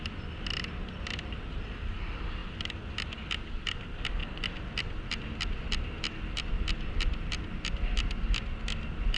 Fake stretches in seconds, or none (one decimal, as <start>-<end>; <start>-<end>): none